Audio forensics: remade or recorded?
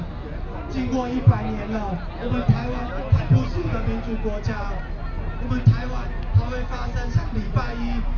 recorded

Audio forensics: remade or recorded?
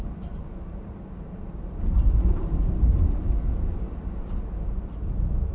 recorded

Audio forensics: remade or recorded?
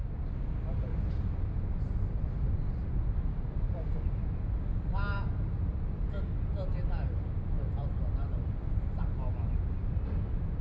recorded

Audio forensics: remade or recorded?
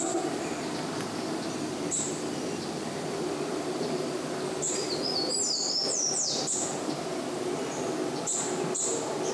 remade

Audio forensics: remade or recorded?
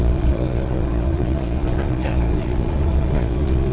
remade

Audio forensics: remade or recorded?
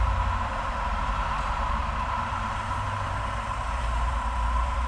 remade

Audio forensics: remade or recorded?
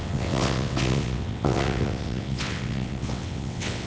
remade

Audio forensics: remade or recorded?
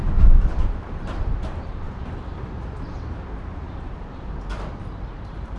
remade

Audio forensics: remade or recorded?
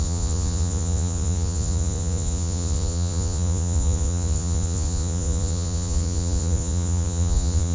remade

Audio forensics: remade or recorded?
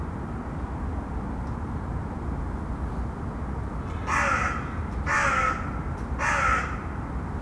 recorded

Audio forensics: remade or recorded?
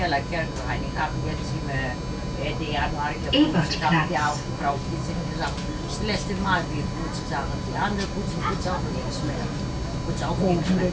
recorded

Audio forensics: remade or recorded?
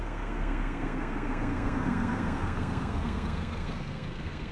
remade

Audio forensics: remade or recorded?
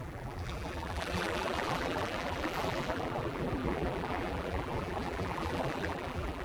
remade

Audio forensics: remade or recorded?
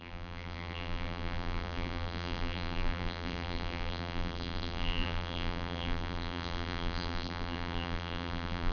remade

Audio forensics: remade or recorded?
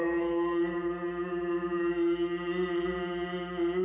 recorded